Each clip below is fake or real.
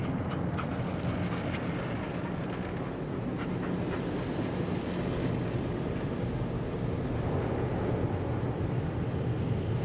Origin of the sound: real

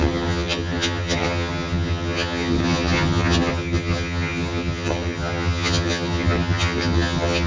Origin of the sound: fake